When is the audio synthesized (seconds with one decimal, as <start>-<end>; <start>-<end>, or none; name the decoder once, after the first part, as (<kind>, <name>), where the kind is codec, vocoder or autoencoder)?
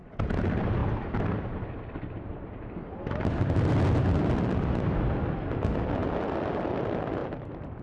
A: 7.2-7.8 (vocoder, BigVGAN v2)